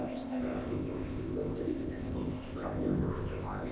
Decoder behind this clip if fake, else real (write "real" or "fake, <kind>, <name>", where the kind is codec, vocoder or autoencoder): fake, codec, ZipCodec